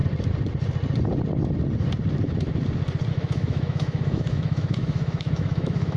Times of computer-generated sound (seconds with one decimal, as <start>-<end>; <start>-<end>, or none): 3.1-6.0